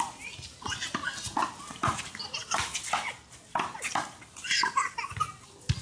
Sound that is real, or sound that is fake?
real